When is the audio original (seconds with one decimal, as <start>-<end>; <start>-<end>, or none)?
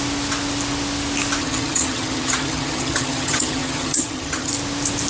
0.0-1.4; 4.5-5.1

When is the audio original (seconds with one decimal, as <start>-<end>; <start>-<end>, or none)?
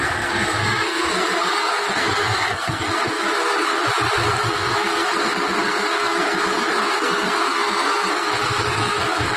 3.8-4.3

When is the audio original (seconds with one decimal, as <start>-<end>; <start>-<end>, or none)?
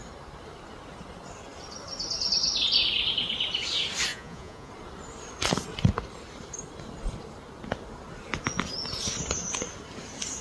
0.0-4.1; 4.7-10.4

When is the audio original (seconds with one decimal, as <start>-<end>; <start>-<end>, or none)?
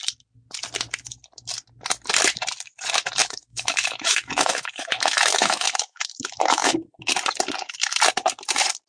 0.0-3.2; 7.1-8.9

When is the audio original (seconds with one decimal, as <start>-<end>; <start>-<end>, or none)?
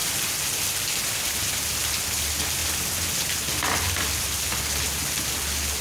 0.0-5.8